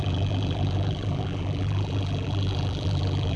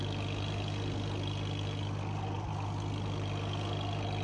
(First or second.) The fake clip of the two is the first